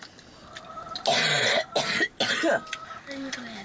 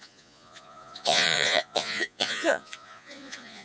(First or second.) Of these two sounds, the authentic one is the first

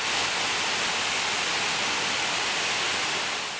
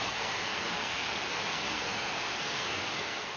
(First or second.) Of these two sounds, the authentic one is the first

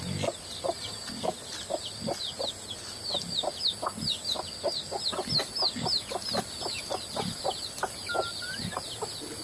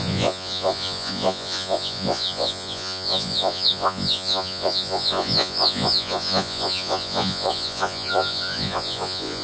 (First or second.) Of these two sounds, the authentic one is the first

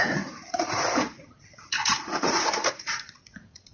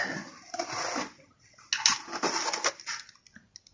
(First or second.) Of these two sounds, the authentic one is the second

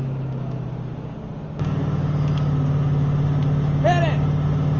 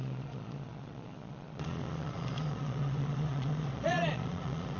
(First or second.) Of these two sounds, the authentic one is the first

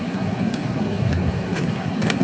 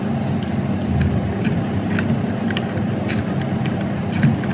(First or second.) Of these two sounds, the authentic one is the second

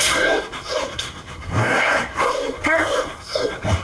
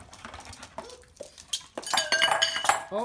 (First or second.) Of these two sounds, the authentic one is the second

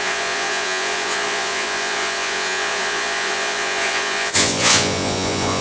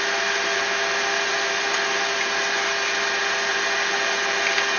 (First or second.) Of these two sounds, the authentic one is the second